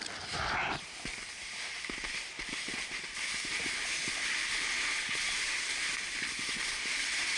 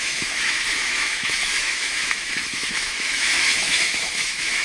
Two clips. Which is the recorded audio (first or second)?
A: first